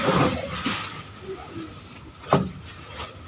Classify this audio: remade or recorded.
recorded